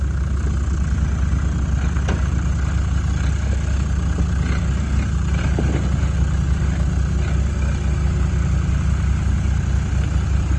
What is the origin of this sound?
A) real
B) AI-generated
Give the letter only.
A